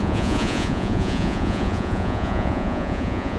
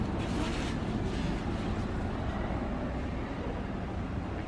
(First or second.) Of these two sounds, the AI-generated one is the first